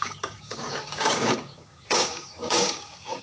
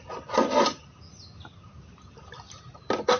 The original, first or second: second